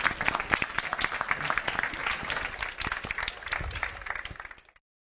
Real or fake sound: real